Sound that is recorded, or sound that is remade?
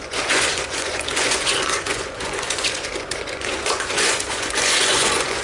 remade